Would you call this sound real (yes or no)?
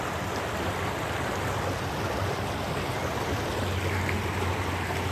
yes